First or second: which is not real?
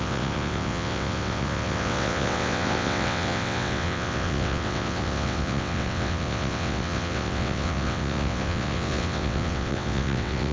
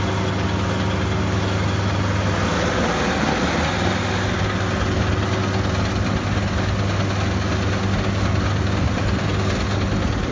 first